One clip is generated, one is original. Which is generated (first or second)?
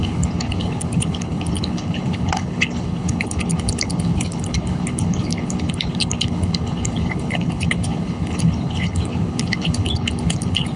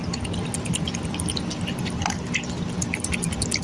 first